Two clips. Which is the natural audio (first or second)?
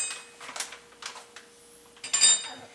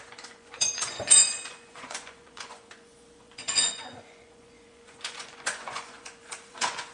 first